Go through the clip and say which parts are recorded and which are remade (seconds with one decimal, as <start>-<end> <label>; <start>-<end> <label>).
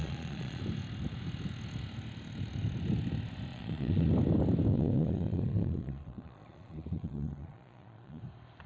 0.0-0.6 remade; 0.6-3.5 recorded; 3.5-4.1 remade; 4.1-4.7 recorded; 4.7-8.2 remade; 8.2-8.7 recorded